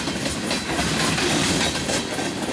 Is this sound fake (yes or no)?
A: no